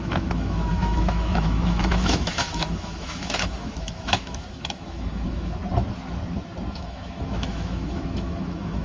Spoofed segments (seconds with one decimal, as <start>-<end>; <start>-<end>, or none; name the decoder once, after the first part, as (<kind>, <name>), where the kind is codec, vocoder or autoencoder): 0.0-5.6 (autoencoder, DAC-VAE); 6.7-8.8